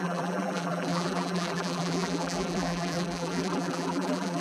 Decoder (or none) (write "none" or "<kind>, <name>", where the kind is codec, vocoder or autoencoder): vocoder, BigVGAN v2